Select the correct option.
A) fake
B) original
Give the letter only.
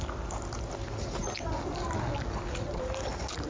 B